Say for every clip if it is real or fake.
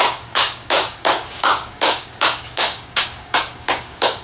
fake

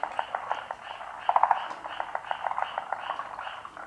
real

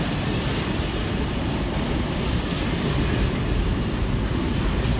real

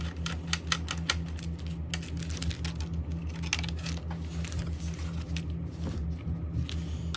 real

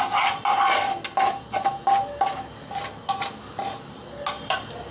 real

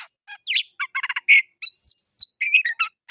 real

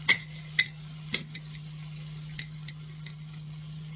real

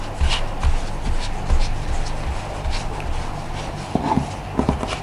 real